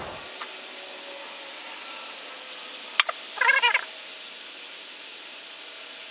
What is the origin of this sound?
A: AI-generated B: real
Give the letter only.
B